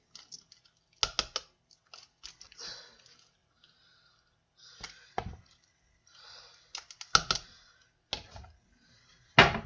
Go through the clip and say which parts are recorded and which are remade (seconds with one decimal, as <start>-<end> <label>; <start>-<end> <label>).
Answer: 0.0-3.4 recorded; 3.4-6.4 remade; 6.4-9.7 recorded